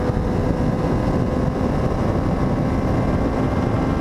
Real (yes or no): yes